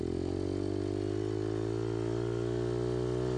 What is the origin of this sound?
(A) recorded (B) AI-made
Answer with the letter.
A